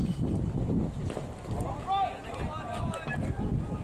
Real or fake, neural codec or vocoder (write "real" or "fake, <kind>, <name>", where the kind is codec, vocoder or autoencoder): real